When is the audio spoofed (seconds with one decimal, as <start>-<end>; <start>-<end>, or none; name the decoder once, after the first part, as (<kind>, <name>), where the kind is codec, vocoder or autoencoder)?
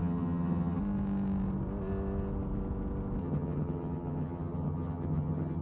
0.0-0.8 (vocoder, HiFi-GAN); 3.2-5.6